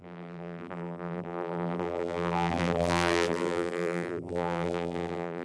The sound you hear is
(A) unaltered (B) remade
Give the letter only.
B